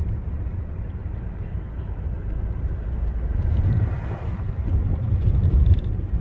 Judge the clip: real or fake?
fake